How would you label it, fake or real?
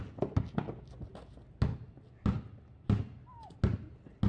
real